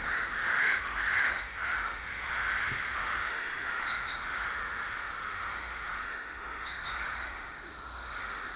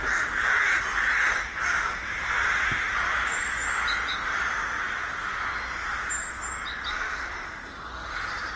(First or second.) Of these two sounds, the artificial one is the first